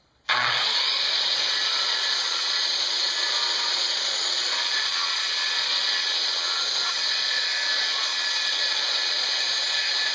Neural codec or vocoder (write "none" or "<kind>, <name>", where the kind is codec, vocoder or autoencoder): vocoder, Vocos